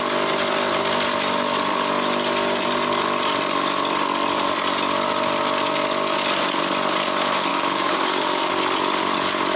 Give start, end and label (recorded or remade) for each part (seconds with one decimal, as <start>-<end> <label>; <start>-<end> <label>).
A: 0.0-7.5 recorded; 7.5-8.5 remade; 8.5-9.6 recorded